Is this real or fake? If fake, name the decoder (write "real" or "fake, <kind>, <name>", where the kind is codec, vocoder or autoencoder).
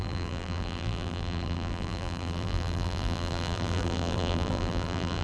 fake, vocoder, BigVGAN v2